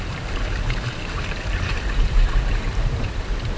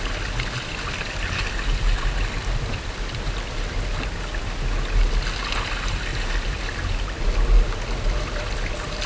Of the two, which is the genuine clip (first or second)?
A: second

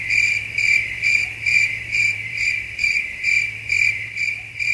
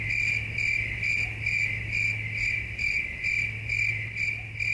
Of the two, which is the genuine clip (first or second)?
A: second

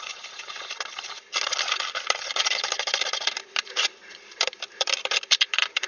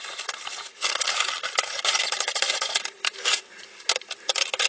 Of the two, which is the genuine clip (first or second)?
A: second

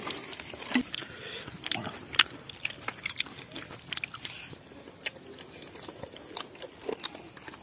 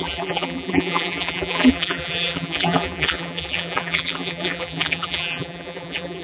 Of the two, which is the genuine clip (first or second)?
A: first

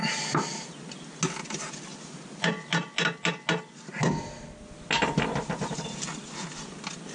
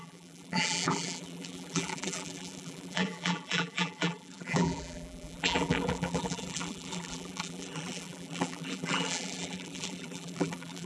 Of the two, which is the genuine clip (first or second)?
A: first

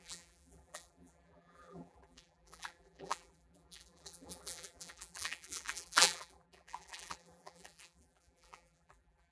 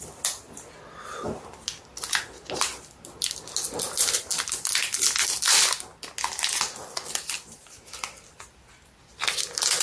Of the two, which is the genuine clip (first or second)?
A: second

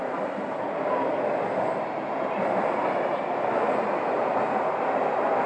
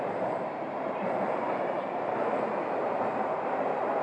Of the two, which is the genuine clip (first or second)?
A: first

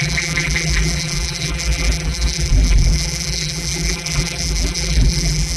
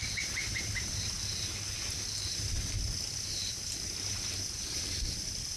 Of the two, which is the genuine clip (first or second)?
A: second